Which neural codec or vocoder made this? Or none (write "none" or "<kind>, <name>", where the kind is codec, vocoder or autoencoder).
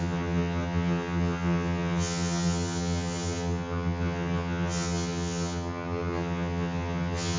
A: vocoder, HiFi-GAN